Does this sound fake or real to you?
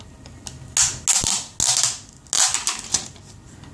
real